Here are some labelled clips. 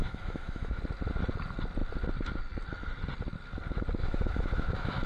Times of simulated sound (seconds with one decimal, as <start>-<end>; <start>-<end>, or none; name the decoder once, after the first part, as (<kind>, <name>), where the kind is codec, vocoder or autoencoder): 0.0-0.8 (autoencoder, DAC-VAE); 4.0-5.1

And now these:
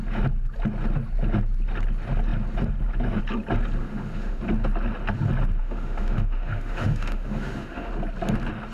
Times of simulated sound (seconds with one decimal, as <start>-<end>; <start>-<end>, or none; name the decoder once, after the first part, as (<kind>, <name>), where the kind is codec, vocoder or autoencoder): 3.8-4.4 (autoencoder, DAC-VAE); 5.6-7.9

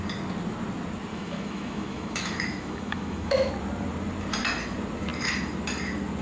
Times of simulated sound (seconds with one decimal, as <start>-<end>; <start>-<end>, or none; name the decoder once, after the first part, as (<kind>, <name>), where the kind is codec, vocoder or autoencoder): 1.1-3.5 (autoencoder, DAC-VAE)

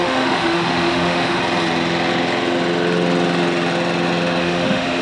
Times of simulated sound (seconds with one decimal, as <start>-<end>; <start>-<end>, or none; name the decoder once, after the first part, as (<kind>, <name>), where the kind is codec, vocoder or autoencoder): 0.0-1.4 (autoencoder, DAC-VAE); 4.4-5.0

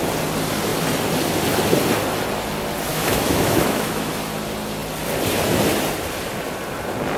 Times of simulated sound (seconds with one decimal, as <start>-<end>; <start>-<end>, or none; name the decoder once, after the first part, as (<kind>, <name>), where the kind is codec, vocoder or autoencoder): 2.9-4.1 (autoencoder, DAC-VAE)